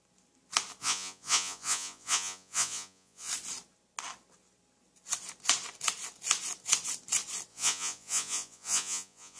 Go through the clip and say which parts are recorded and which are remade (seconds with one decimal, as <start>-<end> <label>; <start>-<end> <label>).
0.0-0.8 recorded; 0.8-3.3 remade; 3.3-7.5 recorded; 7.5-9.4 remade